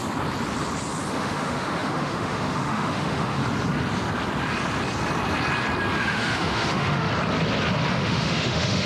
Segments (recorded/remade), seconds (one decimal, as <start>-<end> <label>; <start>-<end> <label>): 0.0-1.1 recorded; 1.1-3.4 remade; 3.4-6.0 recorded; 6.0-7.1 remade; 7.1-7.9 recorded; 7.9-8.9 remade